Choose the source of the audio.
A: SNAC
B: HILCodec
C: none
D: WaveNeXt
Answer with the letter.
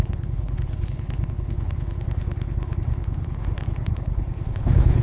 B